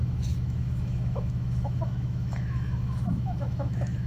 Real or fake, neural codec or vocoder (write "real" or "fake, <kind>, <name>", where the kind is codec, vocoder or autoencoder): fake, autoencoder, DAC-VAE